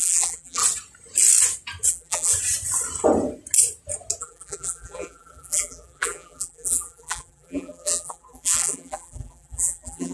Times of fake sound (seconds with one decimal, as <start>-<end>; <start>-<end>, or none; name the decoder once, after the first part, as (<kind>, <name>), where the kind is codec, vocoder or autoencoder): 0.0-0.6 (vocoder, BigVGAN v2); 1.9-2.3; 4.2-10.1